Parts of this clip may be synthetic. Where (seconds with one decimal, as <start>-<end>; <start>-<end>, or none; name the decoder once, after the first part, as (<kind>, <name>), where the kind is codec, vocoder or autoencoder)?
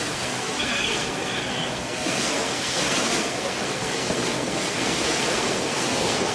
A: 0.0-6.3 (codec, SNAC)